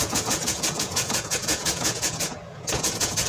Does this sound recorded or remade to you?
remade